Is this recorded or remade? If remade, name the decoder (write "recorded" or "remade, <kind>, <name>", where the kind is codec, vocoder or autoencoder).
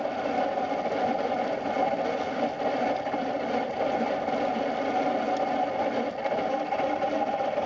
recorded